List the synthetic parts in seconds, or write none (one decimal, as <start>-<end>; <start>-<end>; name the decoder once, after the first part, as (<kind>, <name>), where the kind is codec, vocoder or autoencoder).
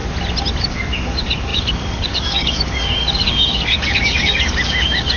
0.6-5.2 (codec, DAC)